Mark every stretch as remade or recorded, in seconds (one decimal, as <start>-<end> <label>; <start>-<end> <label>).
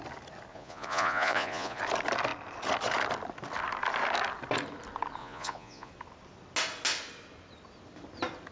0.0-0.5 recorded; 0.5-1.8 remade; 1.8-5.2 recorded; 5.2-5.9 remade; 5.9-8.5 recorded